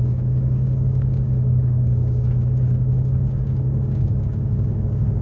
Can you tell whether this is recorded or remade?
remade